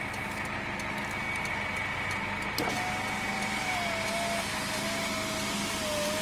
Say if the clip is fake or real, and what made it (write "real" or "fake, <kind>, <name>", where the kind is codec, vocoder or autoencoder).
real